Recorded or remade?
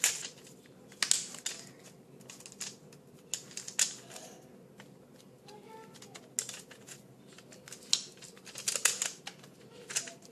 recorded